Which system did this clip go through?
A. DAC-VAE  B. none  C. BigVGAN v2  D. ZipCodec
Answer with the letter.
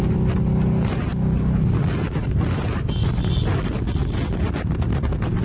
B